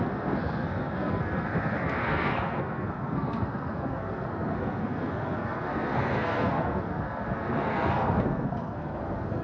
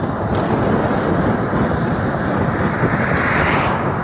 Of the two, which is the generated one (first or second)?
first